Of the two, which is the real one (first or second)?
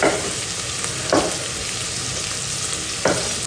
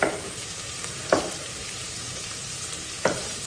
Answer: first